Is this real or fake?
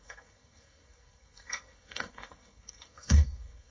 fake